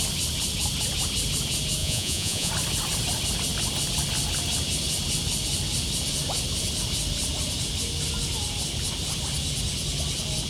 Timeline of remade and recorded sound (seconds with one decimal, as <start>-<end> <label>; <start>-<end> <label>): 0.0-1.8 recorded; 1.8-2.5 remade; 2.5-10.5 recorded